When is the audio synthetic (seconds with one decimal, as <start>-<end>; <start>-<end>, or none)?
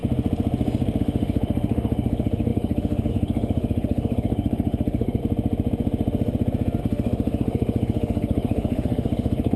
1.0-5.2; 6.8-9.6